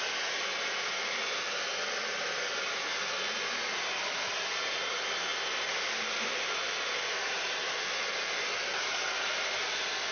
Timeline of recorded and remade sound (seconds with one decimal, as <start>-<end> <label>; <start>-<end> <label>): 0.0-10.1 recorded